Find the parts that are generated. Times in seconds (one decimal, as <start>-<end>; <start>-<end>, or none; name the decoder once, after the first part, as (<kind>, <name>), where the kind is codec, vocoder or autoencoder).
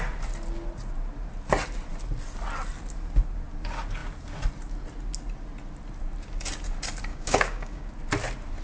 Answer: 7.1-7.9 (codec, DAC)